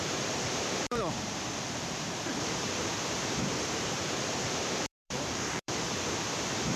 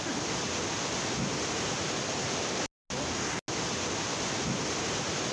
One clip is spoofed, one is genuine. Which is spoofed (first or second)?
first